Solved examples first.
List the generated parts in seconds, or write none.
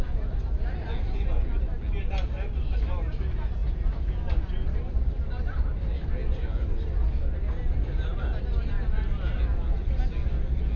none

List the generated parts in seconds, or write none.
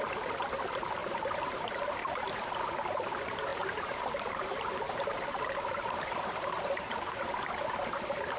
1.0-2.5 (vocoder, BigVGAN v2); 3.5-7.5